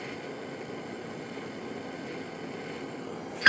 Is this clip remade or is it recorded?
recorded